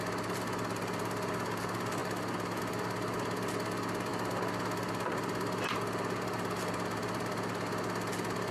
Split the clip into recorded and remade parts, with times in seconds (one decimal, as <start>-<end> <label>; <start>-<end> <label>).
0.0-8.5 recorded

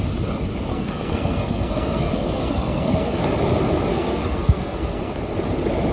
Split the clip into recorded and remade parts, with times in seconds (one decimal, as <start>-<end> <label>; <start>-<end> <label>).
0.0-0.7 recorded; 0.7-3.2 remade; 3.2-3.9 recorded; 3.9-5.1 remade; 5.1-5.9 recorded

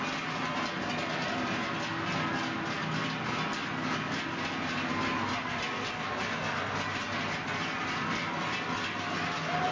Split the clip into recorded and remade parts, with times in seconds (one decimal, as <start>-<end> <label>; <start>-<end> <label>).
0.0-9.7 recorded

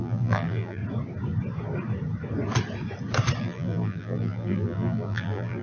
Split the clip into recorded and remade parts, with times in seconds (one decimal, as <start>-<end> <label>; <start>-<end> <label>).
0.0-0.8 remade; 0.8-3.4 recorded; 3.4-5.6 remade